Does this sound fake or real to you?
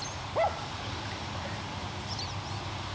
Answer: fake